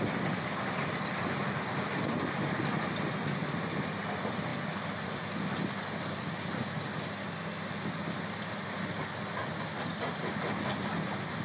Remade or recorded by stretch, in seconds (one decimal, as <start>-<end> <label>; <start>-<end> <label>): 0.0-4.5 recorded; 4.5-5.3 remade; 5.3-9.4 recorded; 9.4-10.5 remade; 10.5-11.4 recorded